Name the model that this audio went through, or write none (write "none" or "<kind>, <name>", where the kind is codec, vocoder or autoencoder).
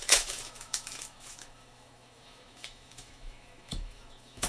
autoencoder, DAC-VAE